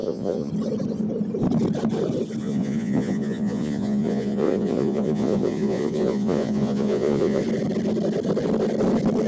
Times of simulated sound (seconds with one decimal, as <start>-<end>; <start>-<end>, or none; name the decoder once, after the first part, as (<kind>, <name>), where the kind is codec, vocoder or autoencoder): 0.0-0.5 (vocoder, Vocos); 2.4-7.4